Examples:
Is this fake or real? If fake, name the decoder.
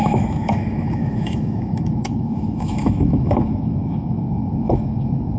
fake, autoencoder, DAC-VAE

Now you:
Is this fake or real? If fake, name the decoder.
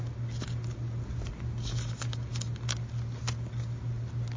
real